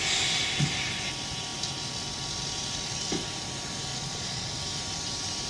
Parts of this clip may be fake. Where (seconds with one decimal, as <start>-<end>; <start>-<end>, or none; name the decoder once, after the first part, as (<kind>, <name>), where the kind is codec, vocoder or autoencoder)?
3.9-4.5 (vocoder, Vocos)